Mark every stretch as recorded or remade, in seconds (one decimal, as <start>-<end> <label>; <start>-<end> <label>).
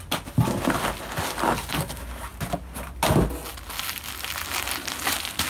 0.0-5.5 recorded